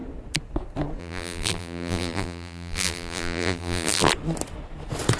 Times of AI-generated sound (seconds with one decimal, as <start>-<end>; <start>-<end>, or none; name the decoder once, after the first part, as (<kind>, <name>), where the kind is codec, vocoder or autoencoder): 1.0-4.1 (vocoder, BigVGAN v2)